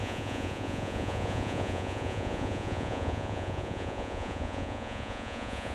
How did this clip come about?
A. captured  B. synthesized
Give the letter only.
B